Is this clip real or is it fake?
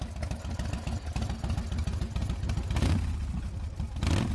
real